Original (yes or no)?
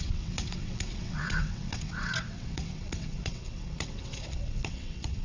no